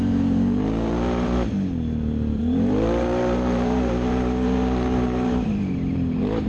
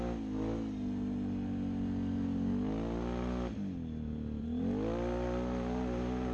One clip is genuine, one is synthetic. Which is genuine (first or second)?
second